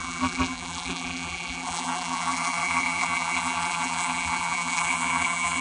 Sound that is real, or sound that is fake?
fake